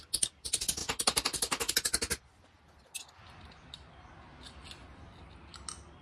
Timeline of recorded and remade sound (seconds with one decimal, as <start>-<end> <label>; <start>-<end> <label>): 0.0-6.0 recorded